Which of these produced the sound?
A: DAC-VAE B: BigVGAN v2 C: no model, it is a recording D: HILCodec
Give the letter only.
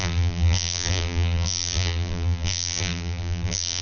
B